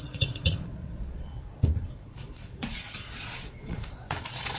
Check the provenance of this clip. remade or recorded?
remade